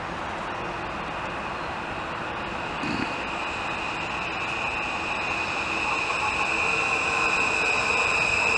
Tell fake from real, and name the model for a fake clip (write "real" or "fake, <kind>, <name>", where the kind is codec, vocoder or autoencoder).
real